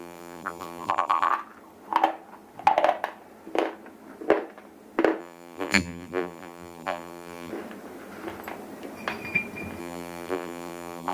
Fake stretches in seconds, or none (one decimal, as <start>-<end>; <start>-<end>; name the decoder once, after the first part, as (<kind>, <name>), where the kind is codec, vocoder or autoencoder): 0.0-1.3 (vocoder, BigVGAN v2); 5.2-7.5; 9.8-11.1